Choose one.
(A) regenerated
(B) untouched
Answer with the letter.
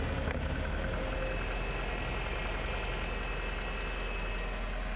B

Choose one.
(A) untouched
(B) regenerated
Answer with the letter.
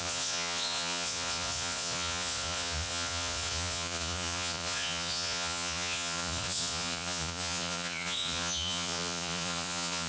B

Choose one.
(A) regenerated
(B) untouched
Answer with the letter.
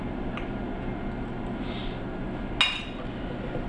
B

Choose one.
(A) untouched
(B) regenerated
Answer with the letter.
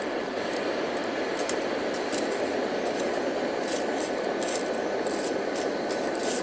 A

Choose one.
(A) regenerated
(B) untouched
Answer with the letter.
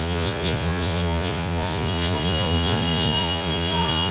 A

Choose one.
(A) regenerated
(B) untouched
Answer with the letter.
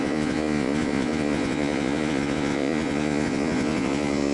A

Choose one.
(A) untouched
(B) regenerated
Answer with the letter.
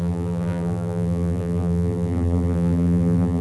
B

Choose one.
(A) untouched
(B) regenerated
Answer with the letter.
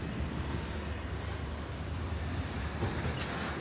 A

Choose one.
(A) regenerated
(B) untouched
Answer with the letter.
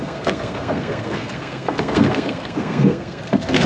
A